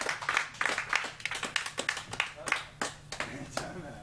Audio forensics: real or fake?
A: real